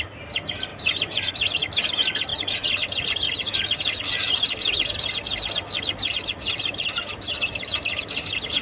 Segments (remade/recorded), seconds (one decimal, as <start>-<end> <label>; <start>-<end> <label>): 0.0-0.7 recorded; 0.7-1.3 remade; 1.3-8.6 recorded